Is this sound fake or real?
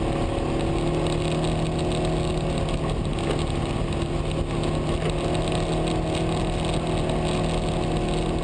real